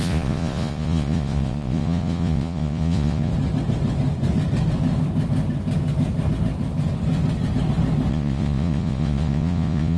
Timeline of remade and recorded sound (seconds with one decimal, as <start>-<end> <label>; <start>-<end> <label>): 0.0-3.3 remade; 3.3-8.1 recorded; 8.1-10.0 remade